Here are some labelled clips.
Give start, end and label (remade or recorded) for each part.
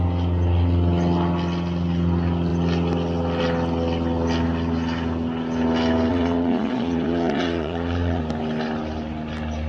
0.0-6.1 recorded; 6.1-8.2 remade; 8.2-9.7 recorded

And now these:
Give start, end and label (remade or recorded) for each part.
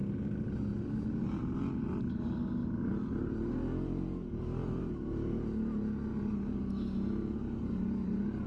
0.0-8.5 recorded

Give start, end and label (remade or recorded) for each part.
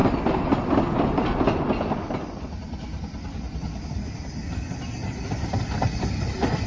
0.0-6.7 recorded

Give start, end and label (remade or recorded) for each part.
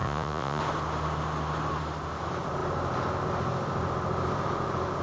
0.0-0.6 remade; 0.6-5.0 recorded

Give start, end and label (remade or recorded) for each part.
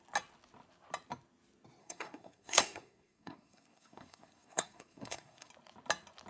0.0-1.8 recorded; 1.8-5.5 remade; 5.5-6.3 recorded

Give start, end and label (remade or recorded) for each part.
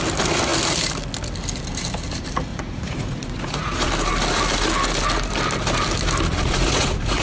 0.0-2.5 recorded; 2.5-3.9 remade; 3.9-6.3 recorded; 6.3-7.2 remade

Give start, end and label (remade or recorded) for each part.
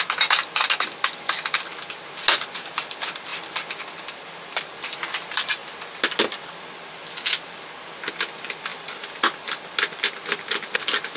0.0-11.2 recorded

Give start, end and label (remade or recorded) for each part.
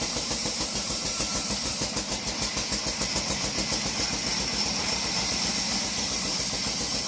0.0-1.7 remade; 1.7-4.6 recorded; 4.6-6.3 remade; 6.3-7.1 recorded